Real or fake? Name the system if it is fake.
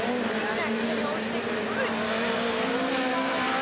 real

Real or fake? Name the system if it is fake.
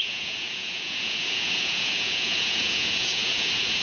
fake, vocoder, Vocos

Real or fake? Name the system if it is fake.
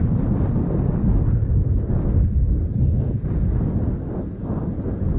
real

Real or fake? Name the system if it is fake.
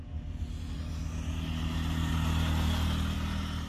real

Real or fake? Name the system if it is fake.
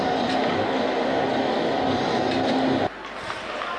real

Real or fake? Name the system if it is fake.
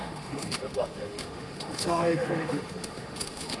fake, autoencoder, DAC-VAE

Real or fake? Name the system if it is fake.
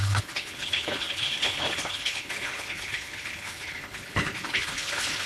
fake, codec, HILCodec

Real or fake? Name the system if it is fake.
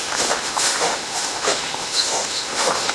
fake, autoencoder, DAC-VAE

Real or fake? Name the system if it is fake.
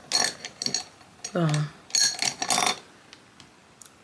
real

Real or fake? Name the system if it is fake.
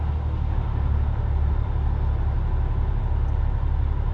real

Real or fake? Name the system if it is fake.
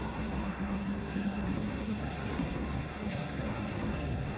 fake, codec, SNAC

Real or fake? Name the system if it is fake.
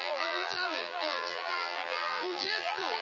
fake, vocoder, BigVGAN v2